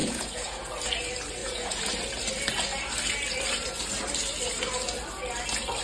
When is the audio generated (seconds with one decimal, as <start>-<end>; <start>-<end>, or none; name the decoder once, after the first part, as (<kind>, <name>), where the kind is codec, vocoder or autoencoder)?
0.0-0.7 (vocoder, Vocos); 1.4-1.9